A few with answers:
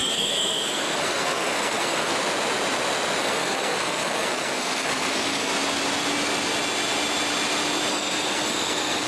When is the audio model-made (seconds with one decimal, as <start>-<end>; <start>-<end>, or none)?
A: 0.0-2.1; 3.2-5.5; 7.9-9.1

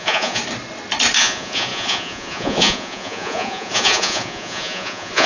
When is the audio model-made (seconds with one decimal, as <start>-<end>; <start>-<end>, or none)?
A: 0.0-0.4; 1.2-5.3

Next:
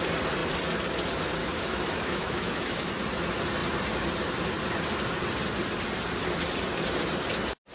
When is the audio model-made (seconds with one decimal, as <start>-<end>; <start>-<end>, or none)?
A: 1.4-2.9

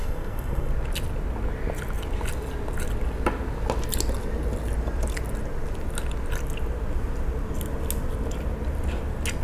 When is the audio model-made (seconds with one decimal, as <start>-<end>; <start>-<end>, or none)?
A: 0.0-0.7

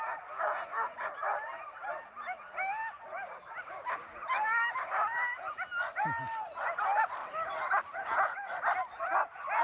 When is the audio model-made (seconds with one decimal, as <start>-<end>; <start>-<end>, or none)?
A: 7.2-9.0

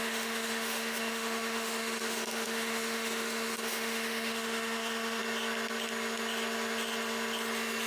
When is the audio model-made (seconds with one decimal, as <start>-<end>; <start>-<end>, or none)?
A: 0.0-5.2

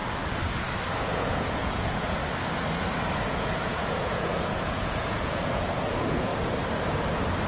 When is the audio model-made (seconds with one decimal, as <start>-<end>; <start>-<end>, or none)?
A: 1.0-2.2; 3.3-6.3

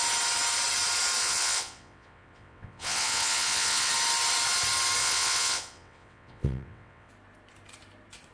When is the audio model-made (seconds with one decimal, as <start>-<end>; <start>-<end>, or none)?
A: 1.2-3.9; 5.0-7.1